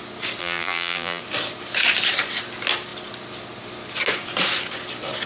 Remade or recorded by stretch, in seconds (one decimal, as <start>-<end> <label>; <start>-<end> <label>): 0.0-0.4 recorded; 0.4-1.2 remade; 1.2-5.3 recorded